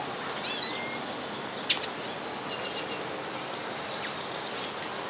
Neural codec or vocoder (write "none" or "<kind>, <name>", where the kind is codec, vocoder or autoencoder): none